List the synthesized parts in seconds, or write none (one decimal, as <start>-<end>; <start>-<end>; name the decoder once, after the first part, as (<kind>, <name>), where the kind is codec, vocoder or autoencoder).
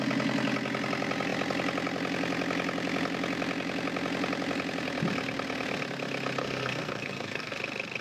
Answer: 6.4-7.5 (codec, SNAC)